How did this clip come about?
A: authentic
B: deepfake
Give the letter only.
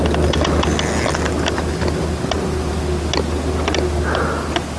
A